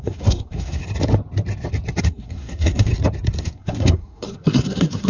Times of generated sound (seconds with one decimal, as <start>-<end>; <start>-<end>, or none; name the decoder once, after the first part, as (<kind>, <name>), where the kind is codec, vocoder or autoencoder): 0.0-0.8 (codec, SNAC); 2.0-2.9; 3.4-5.1

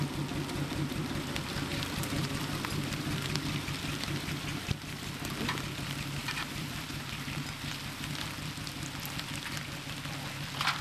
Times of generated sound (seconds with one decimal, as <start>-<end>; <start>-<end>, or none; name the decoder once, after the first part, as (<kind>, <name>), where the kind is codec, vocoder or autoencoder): 1.7-3.9 (vocoder, BigVGAN v2); 6.2-7.0

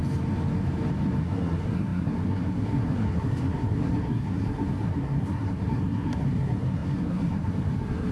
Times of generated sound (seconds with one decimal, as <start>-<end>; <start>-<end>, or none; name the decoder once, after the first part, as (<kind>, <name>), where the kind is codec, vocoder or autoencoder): 1.2-8.1 (codec, SNAC)